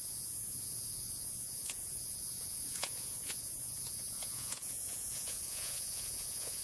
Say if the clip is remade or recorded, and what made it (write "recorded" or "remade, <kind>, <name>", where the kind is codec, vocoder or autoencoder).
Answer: remade, vocoder, Vocos